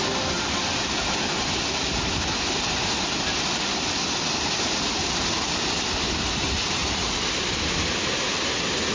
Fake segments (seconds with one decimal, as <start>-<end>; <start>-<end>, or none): none

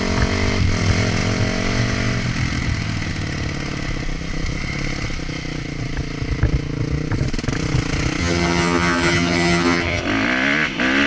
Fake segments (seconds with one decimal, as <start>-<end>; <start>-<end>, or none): 8.2-10.0

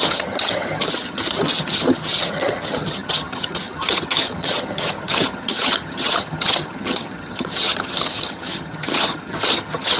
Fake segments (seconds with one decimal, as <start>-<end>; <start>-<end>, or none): 0.0-10.0

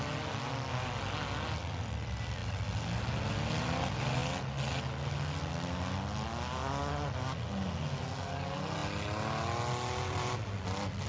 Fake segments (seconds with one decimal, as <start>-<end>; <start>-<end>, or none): none